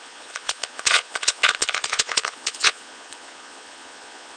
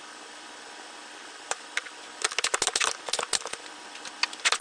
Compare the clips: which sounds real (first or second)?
second